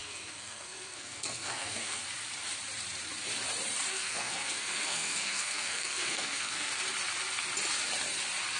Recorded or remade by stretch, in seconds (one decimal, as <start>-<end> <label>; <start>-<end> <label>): 0.0-2.0 remade; 2.0-3.9 recorded; 3.9-6.7 remade; 6.7-8.6 recorded